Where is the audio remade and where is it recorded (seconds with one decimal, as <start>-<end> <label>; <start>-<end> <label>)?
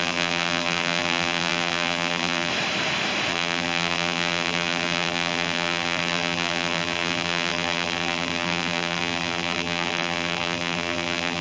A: 0.0-2.5 remade; 2.5-3.3 recorded; 3.3-11.4 remade